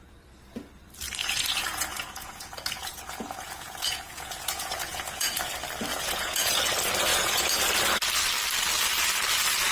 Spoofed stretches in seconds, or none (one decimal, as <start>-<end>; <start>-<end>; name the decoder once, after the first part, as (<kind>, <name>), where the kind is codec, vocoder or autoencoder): 1.2-5.5 (vocoder, Vocos); 5.9-6.6; 7.1-7.6